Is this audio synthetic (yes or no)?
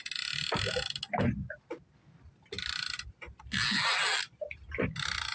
no